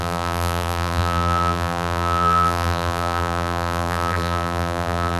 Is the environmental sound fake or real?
fake